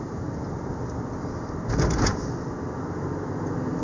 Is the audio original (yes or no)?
yes